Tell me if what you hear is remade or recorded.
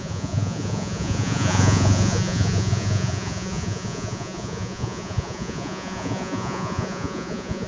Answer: remade